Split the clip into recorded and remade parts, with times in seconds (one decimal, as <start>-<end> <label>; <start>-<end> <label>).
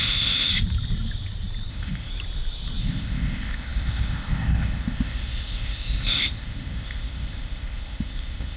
0.0-0.5 remade; 0.5-1.7 recorded; 1.7-2.1 remade; 2.1-2.8 recorded; 2.8-8.6 remade